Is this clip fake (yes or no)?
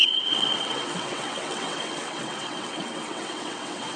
yes